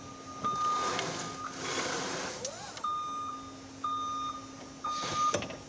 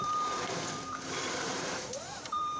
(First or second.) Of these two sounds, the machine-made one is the second